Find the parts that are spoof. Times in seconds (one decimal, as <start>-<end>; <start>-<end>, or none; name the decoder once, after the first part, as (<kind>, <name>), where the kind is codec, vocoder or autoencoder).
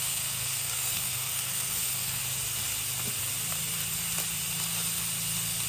0.0-2.2 (codec, SNAC)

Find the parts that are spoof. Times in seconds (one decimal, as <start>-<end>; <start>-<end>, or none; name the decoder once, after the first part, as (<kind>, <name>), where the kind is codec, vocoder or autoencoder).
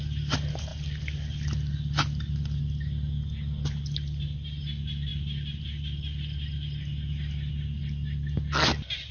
none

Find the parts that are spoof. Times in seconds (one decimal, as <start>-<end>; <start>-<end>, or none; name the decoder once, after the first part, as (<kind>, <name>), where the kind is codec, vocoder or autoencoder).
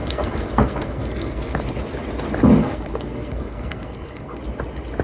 0.0-1.6 (codec, SNAC); 2.6-4.4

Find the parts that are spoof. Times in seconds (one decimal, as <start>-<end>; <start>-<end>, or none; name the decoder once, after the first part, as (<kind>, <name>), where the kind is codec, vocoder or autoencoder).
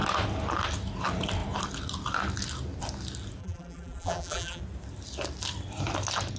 3.4-4.6 (vocoder, BigVGAN v2)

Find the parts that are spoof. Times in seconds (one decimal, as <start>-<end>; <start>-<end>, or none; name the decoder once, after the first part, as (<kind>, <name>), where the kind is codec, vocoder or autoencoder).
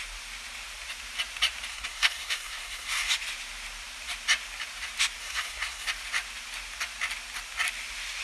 1.7-3.1 (codec, SNAC); 5.2-5.9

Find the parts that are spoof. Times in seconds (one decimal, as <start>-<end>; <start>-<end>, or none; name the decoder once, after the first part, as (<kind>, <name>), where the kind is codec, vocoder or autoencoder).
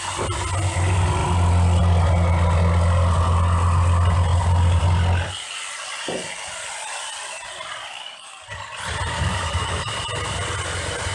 7.9-8.4 (codec, DAC); 9.3-9.8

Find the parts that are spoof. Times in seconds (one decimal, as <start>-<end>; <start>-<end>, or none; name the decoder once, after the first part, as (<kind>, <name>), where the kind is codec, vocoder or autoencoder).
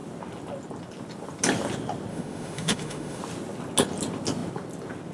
2.1-3.2 (autoencoder, DAC-VAE)